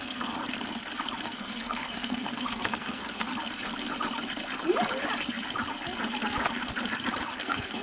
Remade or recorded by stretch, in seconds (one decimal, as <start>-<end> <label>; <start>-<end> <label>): 0.0-0.4 remade; 0.4-1.2 recorded; 1.2-3.3 remade; 3.3-7.3 recorded; 7.3-7.8 remade